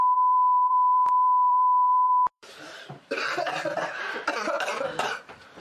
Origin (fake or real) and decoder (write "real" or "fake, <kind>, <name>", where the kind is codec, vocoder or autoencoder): fake, vocoder, BigVGAN v2